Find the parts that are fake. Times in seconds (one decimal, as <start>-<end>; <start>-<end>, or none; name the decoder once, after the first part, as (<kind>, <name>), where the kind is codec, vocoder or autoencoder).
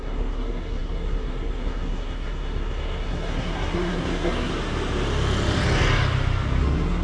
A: 0.0-4.5 (codec, SNAC); 6.6-7.0